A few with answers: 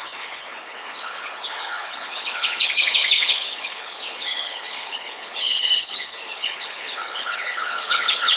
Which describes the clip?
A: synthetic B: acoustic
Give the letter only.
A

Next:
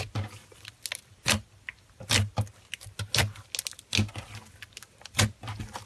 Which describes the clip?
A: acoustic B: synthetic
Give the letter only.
A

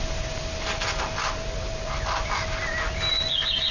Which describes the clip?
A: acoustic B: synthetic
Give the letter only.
A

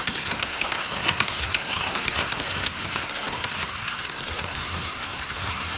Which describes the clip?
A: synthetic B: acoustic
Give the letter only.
A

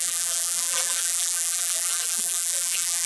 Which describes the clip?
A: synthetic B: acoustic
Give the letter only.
A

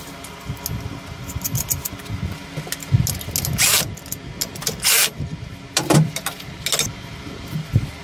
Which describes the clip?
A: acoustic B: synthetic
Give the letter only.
A